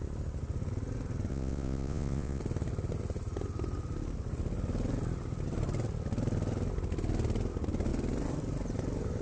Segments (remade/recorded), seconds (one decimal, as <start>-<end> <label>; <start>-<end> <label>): 0.0-1.3 recorded; 1.3-2.4 remade; 2.4-9.2 recorded